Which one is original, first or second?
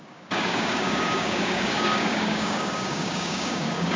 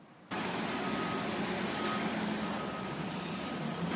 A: second